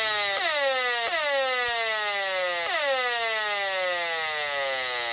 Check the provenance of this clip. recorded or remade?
recorded